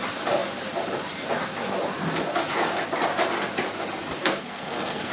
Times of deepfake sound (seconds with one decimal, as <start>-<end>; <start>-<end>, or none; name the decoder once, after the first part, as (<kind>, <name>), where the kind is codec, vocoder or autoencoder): 4.2-5.1 (codec, SNAC)